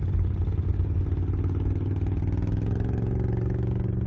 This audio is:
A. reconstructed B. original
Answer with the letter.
B